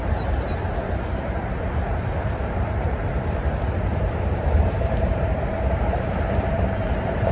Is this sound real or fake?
fake